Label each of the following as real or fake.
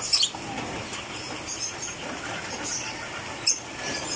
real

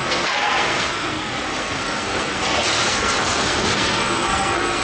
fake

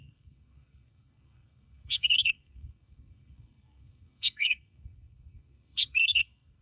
fake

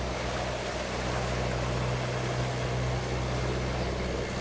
real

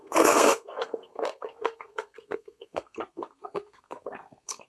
fake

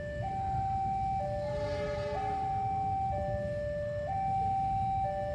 real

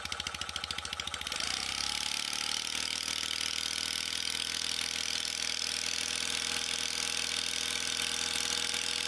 real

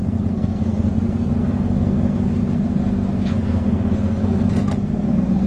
fake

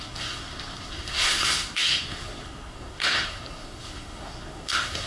fake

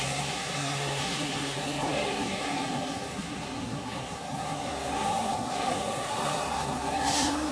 fake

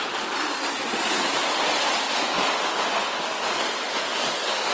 real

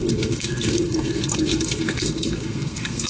fake